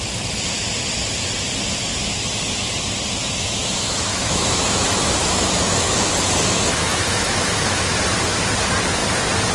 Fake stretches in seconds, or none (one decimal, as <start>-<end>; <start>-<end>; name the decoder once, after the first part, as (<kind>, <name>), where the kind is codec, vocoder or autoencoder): 1.9-2.7 (autoencoder, DAC-VAE); 3.2-7.8